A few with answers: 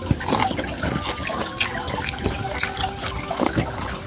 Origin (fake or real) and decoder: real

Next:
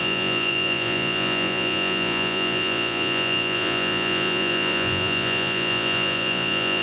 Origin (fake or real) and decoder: fake, vocoder, Vocos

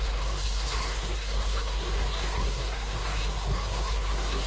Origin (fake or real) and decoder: fake, codec, SNAC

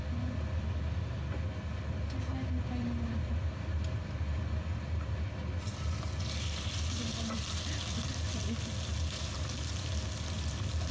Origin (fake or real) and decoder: real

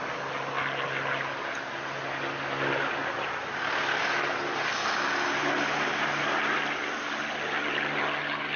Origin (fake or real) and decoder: real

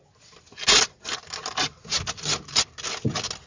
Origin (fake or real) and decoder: real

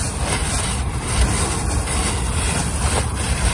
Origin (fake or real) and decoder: real